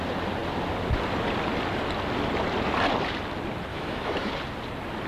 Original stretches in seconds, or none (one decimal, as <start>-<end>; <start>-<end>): 0.0-3.7; 4.3-5.1